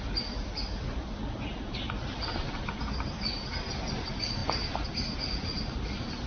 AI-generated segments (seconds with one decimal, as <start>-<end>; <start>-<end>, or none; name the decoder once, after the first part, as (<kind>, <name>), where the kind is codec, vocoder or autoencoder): none